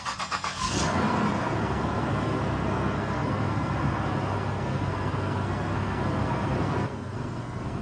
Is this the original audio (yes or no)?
no